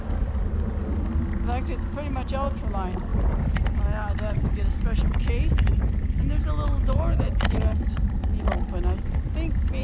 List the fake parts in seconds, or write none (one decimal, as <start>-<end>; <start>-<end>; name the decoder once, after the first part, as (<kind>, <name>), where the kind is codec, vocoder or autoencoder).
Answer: 3.1-3.8 (vocoder, BigVGAN v2); 7.7-8.3